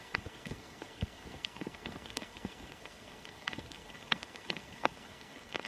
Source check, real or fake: fake